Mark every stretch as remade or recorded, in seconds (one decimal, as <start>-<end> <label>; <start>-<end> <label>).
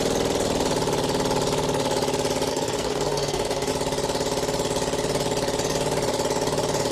0.0-2.5 recorded; 2.5-3.7 remade; 3.7-6.9 recorded